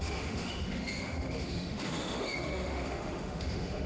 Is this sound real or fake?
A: fake